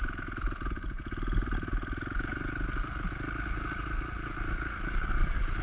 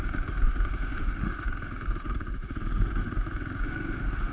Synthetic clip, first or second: second